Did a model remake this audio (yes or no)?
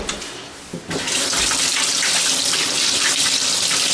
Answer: no